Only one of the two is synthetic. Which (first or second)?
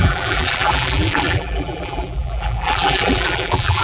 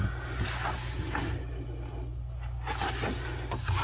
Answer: first